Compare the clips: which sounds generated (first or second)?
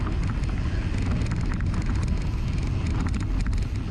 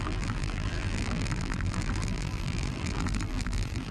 second